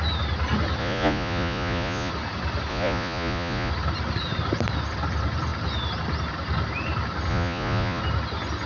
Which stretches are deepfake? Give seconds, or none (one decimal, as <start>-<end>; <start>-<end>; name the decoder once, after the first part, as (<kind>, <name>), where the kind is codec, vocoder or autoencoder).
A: 0.8-2.1 (vocoder, Vocos); 2.7-3.7; 7.3-8.0